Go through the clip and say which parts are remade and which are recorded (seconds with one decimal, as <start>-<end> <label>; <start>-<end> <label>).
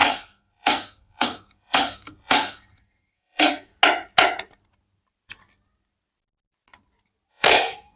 0.0-3.7 remade; 3.7-7.3 recorded; 7.3-8.0 remade